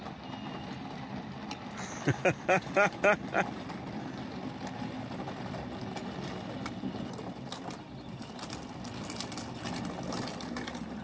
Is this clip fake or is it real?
real